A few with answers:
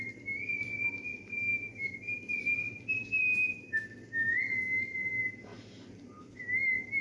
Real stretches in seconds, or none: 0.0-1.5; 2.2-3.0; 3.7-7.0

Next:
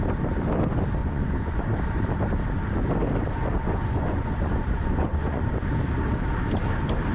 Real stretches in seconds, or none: 0.0-1.0; 1.6-3.8; 5.5-7.1

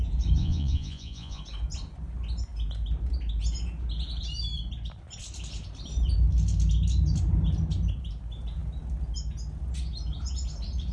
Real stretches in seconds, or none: 0.0-0.4; 1.4-10.9

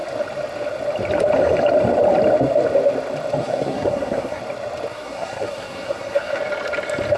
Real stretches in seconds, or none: 0.0-3.4; 4.4-4.9; 6.4-7.2